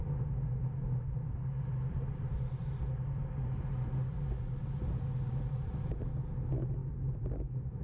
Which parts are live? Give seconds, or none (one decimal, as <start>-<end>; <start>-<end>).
0.0-7.8